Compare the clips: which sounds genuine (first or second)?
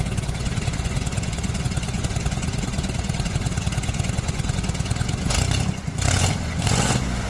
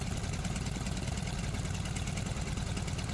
second